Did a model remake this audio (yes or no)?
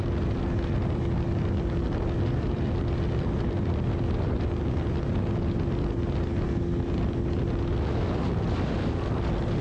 no